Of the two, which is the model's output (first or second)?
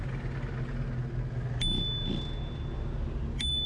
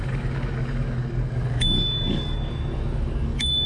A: second